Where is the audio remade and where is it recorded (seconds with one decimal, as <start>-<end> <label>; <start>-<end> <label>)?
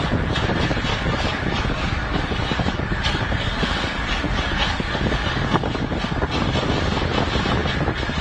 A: 0.0-0.9 recorded; 0.9-5.8 remade; 5.8-8.2 recorded